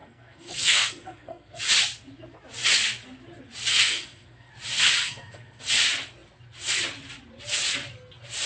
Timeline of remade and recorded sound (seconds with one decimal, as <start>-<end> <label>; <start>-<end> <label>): 0.0-1.6 remade; 1.6-3.7 recorded; 3.7-4.5 remade; 4.5-5.0 recorded; 5.0-5.6 remade; 5.6-8.5 recorded

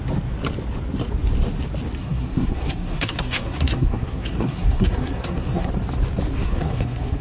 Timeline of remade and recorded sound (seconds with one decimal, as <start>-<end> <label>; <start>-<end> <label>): 0.0-2.0 recorded; 2.0-5.7 remade; 5.7-6.4 recorded; 6.4-7.2 remade

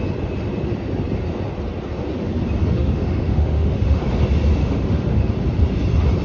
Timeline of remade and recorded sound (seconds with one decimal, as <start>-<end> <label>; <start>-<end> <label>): 0.0-2.6 recorded; 2.6-4.0 remade; 4.0-4.6 recorded; 4.6-5.3 remade; 5.3-6.2 recorded

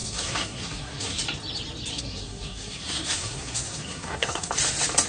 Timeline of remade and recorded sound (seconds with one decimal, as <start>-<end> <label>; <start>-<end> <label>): 0.0-1.2 remade; 1.2-1.9 recorded; 1.9-4.5 remade; 4.5-5.1 recorded

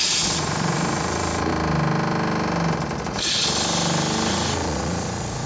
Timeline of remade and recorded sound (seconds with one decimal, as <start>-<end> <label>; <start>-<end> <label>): 0.0-1.5 remade; 1.5-3.0 recorded; 3.0-3.4 remade; 3.4-4.3 recorded; 4.3-5.5 remade

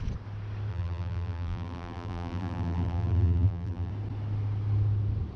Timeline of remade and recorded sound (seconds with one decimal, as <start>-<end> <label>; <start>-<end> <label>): 0.0-0.7 recorded; 0.7-3.9 remade; 3.9-5.4 recorded

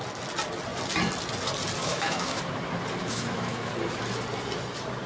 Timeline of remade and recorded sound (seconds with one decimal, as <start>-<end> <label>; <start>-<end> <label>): 0.0-1.8 recorded; 1.8-2.4 remade; 2.4-3.0 recorded; 3.0-3.7 remade; 3.7-5.1 recorded

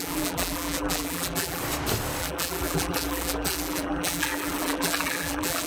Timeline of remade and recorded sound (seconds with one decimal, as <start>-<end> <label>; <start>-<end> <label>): 0.0-1.6 remade; 1.6-2.2 recorded; 2.2-5.7 remade